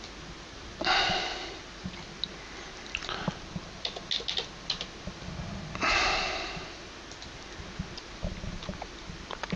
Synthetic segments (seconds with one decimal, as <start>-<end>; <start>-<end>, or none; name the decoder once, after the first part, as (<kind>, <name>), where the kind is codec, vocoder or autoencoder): 1.4-2.0 (vocoder, BigVGAN v2)